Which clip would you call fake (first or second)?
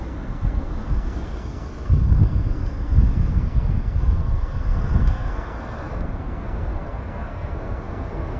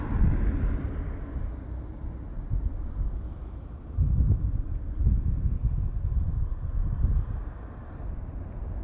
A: first